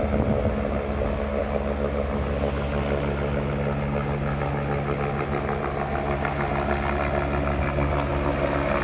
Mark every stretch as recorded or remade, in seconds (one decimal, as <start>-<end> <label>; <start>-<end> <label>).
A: 0.0-8.8 recorded